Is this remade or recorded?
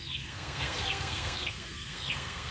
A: remade